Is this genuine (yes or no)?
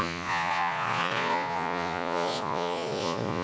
no